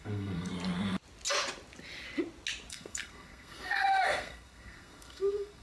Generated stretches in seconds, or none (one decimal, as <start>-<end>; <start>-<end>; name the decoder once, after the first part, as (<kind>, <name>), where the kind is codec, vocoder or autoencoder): 0.0-0.5 (codec, SNAC); 2.7-5.6